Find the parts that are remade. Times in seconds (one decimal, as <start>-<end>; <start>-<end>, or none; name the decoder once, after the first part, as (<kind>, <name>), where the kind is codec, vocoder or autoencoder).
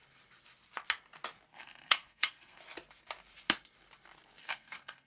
1.5-2.6 (codec, SNAC); 4.4-5.1